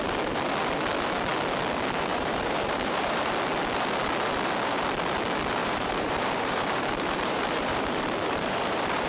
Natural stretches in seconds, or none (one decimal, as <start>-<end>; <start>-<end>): 0.0-2.1; 3.3-5.6